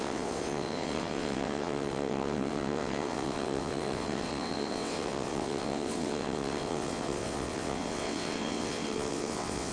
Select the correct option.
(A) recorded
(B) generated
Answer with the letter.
B